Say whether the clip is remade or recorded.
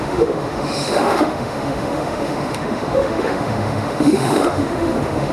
remade